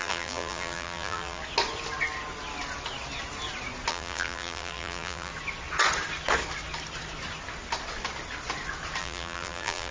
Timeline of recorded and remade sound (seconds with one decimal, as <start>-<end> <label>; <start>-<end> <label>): 0.0-1.4 remade; 1.4-3.9 recorded; 3.9-5.3 remade; 5.3-9.0 recorded; 9.0-9.9 remade